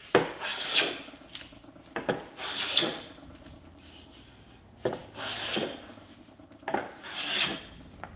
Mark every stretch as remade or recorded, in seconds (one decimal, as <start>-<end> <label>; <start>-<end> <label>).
0.0-8.2 recorded